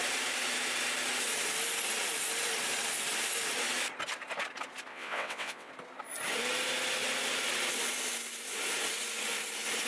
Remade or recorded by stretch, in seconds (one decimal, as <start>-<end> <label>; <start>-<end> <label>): 0.0-4.9 recorded; 4.9-5.7 remade; 5.7-9.9 recorded